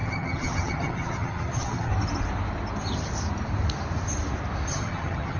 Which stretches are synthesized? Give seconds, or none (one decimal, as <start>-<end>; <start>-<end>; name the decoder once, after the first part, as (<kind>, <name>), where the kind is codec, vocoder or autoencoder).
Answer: 0.0-1.9 (vocoder, HiFi-GAN); 4.7-5.4

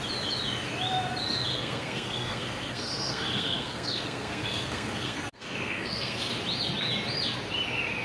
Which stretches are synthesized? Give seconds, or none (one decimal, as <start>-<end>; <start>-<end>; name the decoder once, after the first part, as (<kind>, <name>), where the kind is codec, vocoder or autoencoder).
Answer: 1.5-6.3 (codec, SNAC)